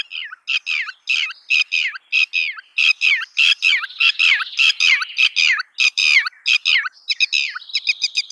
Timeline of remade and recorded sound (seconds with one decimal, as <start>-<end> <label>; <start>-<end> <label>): 0.0-8.3 recorded